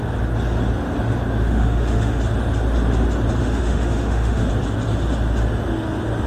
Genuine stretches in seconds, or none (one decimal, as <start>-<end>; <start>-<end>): 0.0-1.3; 2.2-3.4; 4.5-6.3